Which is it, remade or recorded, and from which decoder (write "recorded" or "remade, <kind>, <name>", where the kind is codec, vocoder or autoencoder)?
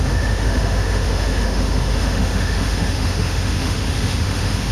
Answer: remade, autoencoder, DAC-VAE